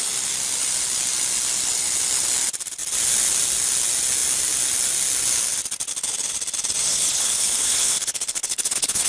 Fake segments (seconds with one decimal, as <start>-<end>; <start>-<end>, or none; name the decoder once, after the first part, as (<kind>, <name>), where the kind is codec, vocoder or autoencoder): 6.9-9.1 (codec, HILCodec)